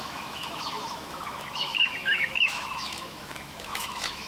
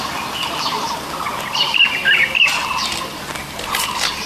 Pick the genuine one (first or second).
second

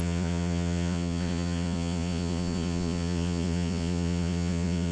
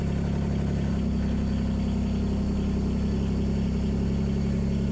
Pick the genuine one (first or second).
second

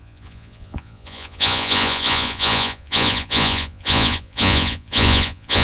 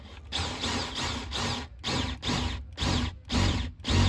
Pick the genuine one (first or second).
second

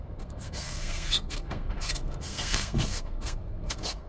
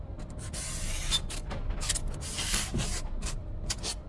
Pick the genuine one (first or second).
second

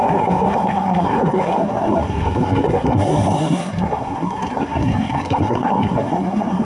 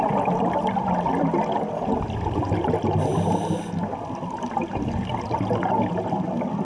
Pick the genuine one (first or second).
second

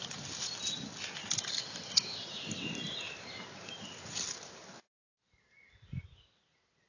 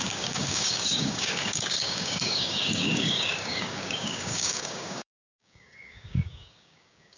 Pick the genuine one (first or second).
first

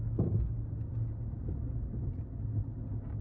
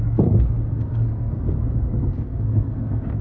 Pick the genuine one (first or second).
first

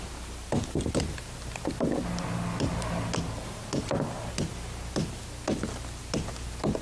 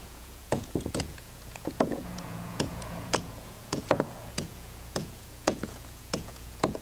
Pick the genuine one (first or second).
first